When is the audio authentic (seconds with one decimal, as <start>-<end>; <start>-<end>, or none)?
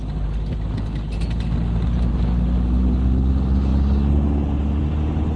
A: 0.0-5.4